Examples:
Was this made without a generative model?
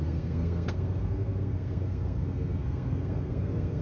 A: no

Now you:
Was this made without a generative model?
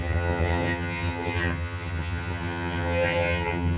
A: no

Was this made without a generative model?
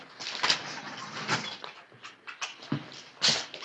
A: yes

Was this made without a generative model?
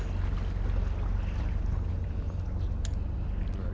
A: yes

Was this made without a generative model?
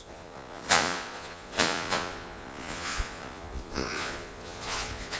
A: no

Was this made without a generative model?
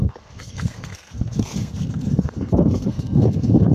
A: no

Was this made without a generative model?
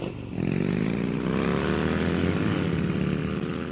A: yes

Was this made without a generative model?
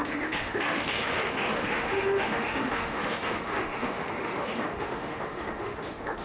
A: no